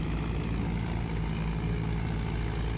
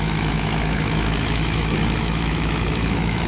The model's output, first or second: second